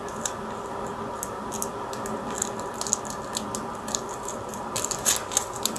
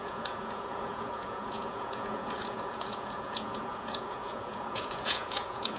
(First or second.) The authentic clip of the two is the first